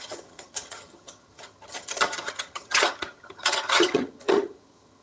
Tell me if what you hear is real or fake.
fake